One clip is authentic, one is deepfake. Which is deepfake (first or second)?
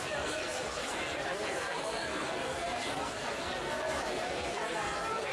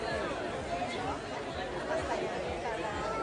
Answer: first